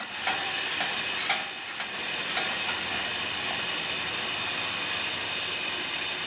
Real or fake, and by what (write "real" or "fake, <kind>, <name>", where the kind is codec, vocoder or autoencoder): real